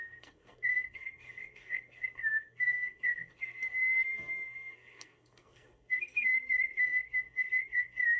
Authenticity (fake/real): fake